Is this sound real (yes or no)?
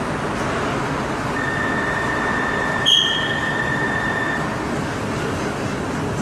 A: yes